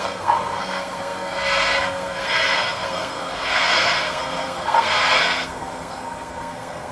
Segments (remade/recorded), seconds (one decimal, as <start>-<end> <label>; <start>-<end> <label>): 0.0-6.9 remade